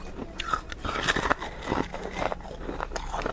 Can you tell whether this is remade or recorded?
recorded